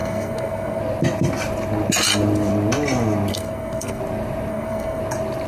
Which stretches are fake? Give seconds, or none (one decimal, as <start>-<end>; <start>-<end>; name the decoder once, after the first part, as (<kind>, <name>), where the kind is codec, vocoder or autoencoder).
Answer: 0.0-0.8 (codec, SNAC); 3.3-4.0; 4.5-5.0